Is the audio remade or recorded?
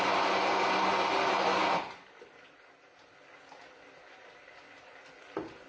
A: recorded